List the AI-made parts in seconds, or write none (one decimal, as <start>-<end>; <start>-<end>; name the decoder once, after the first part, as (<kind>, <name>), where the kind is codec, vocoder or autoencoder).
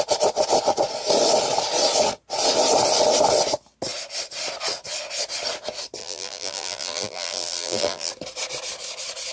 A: 6.0-8.1 (vocoder, BigVGAN v2)